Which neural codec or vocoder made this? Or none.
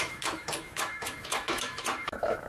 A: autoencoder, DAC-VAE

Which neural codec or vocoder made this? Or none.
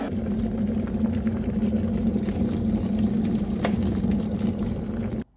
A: none